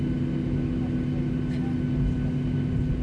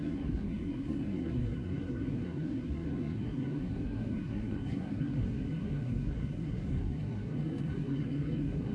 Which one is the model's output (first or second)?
second